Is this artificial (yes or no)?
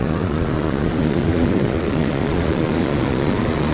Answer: yes